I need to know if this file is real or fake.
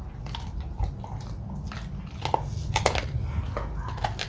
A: real